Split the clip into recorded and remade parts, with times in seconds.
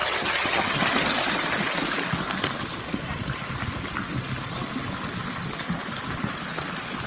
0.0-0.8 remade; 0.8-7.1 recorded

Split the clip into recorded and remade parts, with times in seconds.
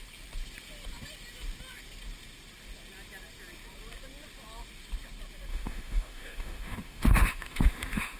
0.0-5.5 recorded; 5.5-8.2 remade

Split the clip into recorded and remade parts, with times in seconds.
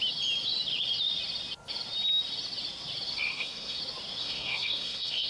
0.0-3.3 recorded; 3.3-3.8 remade; 3.8-4.2 recorded; 4.2-5.3 remade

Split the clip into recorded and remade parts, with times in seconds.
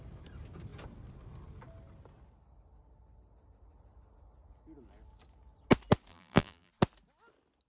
0.0-6.1 recorded; 6.1-6.7 remade; 6.7-7.7 recorded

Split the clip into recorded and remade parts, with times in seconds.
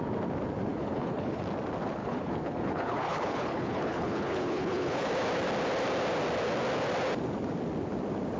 0.0-0.7 recorded; 0.7-1.4 remade; 1.4-2.0 recorded; 2.0-5.1 remade; 5.1-8.4 recorded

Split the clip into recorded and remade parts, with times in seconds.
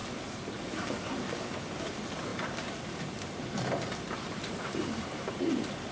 0.0-1.6 recorded; 1.6-5.9 remade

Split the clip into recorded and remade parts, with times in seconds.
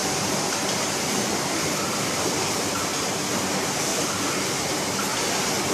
0.0-2.9 remade; 2.9-3.4 recorded; 3.4-3.9 remade; 3.9-4.5 recorded; 4.5-5.1 remade; 5.1-5.7 recorded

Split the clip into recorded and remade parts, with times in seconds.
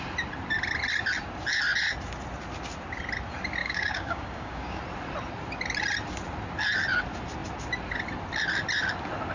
0.0-3.6 recorded; 3.6-4.8 remade; 4.8-9.3 recorded